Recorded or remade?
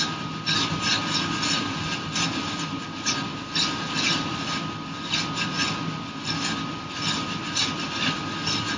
recorded